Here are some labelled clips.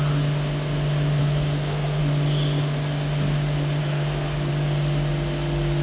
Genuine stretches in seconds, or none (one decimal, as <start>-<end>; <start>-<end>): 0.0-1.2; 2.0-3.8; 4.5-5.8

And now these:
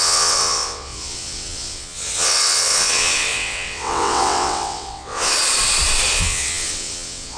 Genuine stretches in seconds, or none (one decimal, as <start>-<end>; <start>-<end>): 5.3-6.1

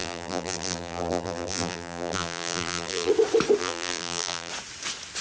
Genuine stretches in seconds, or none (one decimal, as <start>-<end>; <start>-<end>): 3.1-3.6; 4.5-5.2

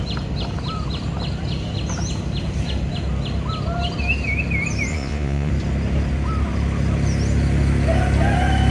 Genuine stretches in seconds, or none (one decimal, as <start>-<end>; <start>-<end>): 0.0-4.9; 5.5-8.7

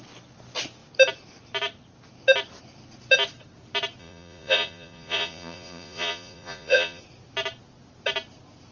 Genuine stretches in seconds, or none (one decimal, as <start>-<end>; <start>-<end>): 0.0-4.0; 7.0-8.7

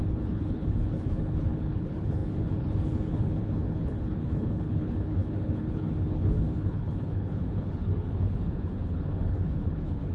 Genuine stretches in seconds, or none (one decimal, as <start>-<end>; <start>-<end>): none

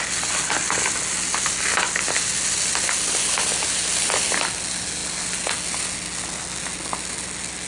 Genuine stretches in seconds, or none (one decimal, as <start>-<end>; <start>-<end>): 0.0-7.7

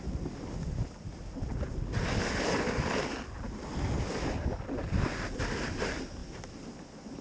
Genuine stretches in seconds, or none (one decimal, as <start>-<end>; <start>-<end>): 0.0-7.2